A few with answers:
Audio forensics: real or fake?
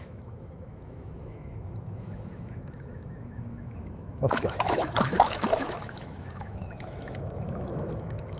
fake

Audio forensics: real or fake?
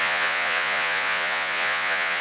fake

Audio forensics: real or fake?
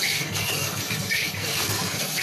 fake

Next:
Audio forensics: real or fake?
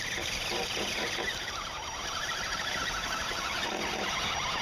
fake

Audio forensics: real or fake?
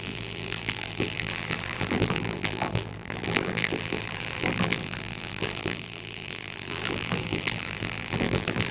fake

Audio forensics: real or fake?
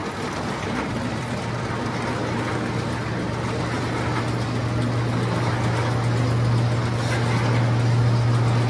real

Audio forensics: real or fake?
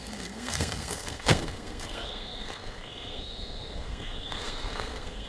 fake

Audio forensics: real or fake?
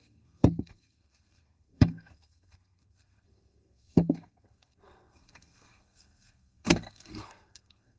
fake